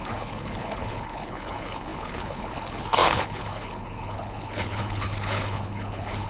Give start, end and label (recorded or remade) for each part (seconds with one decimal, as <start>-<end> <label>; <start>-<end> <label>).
0.0-6.3 remade